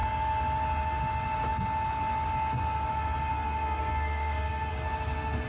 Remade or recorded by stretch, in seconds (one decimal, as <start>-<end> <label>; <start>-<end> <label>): 0.0-3.3 recorded; 3.3-4.7 remade; 4.7-5.5 recorded